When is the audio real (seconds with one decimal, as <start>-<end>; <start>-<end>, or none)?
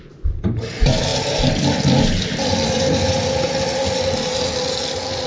0.0-5.3